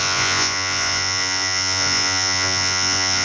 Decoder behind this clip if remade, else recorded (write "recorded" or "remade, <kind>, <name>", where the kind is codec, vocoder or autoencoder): remade, vocoder, Vocos